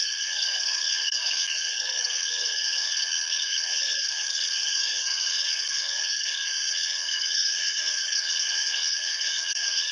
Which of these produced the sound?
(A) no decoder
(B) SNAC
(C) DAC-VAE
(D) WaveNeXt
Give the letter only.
B